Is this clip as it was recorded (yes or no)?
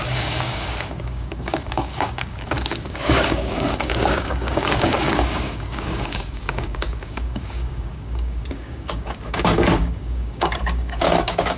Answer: no